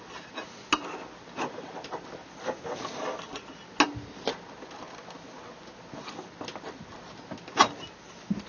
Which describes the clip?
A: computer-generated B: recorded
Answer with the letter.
B